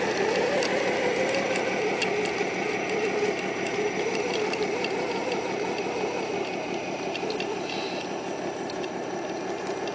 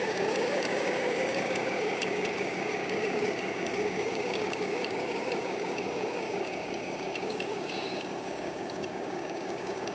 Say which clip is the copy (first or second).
second